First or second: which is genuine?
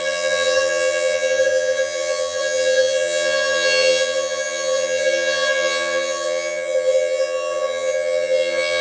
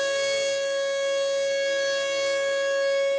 second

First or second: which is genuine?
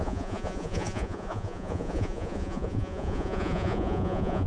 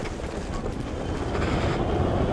second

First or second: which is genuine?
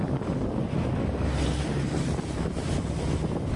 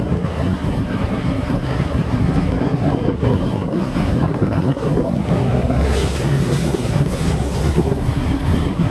first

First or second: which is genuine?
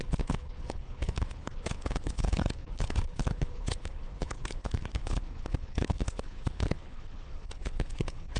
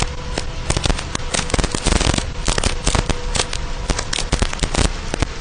second